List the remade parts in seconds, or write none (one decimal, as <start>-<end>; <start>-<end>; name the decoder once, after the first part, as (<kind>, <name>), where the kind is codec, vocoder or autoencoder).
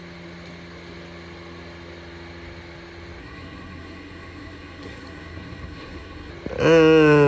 3.2-6.3 (codec, SNAC)